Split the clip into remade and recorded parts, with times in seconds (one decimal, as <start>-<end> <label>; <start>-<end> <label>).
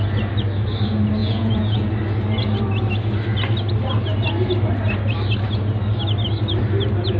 0.0-1.2 recorded; 1.2-1.9 remade; 1.9-7.2 recorded